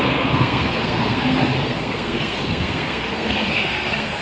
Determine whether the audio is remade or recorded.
remade